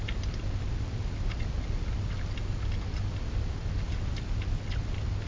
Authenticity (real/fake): real